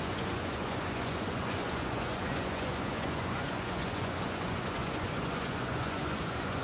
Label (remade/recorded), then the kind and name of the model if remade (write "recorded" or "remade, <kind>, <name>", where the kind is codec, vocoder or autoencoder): remade, vocoder, Vocos